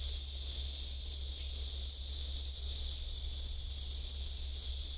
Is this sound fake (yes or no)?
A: no